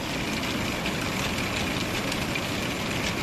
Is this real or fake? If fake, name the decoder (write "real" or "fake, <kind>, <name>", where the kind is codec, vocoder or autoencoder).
real